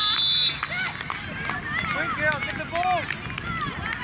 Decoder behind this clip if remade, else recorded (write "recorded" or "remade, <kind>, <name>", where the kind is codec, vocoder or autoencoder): recorded